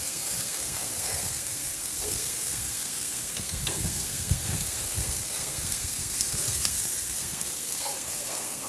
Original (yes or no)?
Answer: no